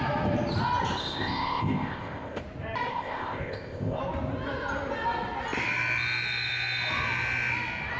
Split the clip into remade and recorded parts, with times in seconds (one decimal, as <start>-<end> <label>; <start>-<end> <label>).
0.0-1.0 recorded; 1.0-2.4 remade; 2.4-2.9 recorded; 2.9-4.0 remade; 4.0-8.0 recorded